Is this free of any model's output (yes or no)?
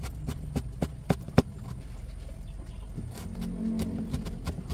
yes